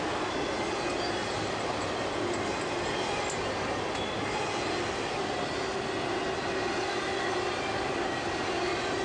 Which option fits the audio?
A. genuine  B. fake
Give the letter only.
A